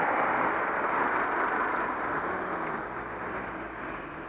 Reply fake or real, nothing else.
real